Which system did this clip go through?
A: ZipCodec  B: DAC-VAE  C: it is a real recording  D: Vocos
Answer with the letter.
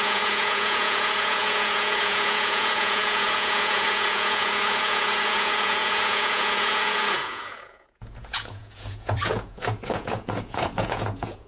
D